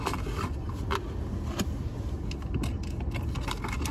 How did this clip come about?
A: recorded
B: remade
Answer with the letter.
A